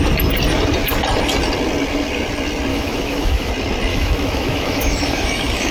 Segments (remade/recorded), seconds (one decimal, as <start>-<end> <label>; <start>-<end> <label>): 0.0-2.7 recorded; 2.7-3.5 remade; 3.5-3.9 recorded; 3.9-5.7 remade